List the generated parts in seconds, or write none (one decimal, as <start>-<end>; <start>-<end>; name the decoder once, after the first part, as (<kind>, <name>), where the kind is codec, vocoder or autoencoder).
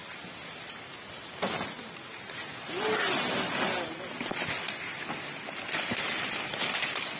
none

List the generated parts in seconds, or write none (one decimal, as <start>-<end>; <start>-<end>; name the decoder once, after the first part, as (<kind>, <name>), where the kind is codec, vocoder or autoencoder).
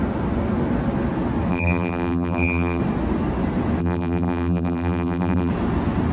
1.5-2.8 (vocoder, BigVGAN v2); 3.8-5.5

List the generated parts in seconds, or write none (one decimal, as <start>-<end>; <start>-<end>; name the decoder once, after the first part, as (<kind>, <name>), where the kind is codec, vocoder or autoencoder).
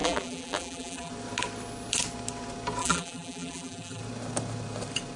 0.0-1.1 (vocoder, BigVGAN v2); 2.8-4.0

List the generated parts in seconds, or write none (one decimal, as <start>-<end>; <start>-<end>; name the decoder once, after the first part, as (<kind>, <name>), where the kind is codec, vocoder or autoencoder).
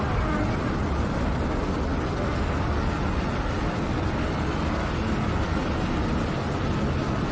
none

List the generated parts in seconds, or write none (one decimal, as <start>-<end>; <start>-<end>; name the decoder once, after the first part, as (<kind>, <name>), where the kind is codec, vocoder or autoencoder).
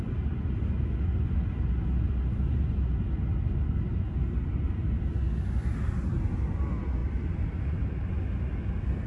none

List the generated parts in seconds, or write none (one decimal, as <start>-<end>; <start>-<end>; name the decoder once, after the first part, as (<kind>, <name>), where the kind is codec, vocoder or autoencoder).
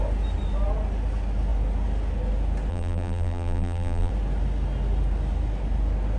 2.7-4.1 (vocoder, BigVGAN v2)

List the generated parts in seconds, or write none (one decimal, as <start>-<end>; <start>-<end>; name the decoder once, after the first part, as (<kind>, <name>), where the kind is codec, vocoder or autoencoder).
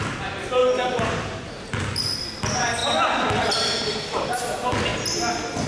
0.6-1.4 (vocoder, BigVGAN v2)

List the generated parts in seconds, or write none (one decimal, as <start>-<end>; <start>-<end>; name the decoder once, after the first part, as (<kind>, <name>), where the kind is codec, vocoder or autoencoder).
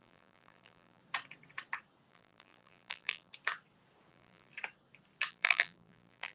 0.0-1.0 (vocoder, BigVGAN v2); 2.1-3.3; 4.1-4.5; 5.3-6.3